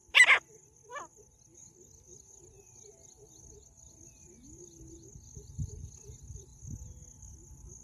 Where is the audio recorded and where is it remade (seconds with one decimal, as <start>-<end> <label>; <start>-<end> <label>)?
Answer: 0.0-7.8 recorded

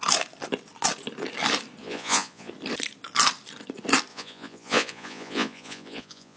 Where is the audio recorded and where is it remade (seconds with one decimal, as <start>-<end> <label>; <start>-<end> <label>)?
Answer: 0.0-1.8 recorded; 1.8-2.5 remade; 2.5-4.1 recorded; 4.1-6.4 remade

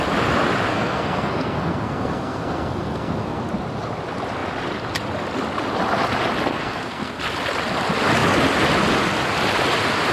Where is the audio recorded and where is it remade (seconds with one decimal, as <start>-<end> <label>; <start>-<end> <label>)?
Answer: 0.0-0.7 recorded; 0.7-3.4 remade; 3.4-6.5 recorded; 6.5-7.2 remade; 7.2-10.1 recorded